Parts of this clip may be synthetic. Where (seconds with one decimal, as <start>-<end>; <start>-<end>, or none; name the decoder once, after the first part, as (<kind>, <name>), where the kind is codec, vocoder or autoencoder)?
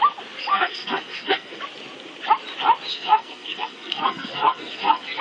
0.5-1.6 (codec, SNAC); 2.9-5.2